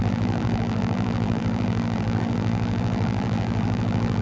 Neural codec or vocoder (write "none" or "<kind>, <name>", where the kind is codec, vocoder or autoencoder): vocoder, BigVGAN v2